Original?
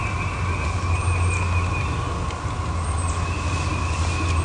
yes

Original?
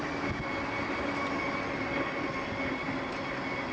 yes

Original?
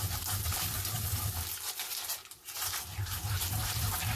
yes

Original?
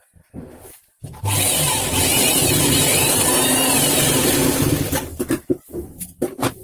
yes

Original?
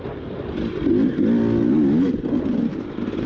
yes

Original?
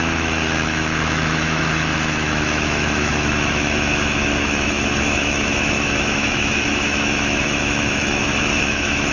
no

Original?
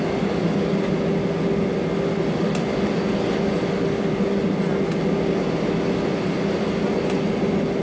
yes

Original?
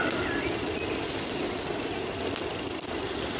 yes